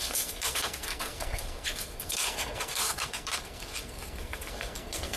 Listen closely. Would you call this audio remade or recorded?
remade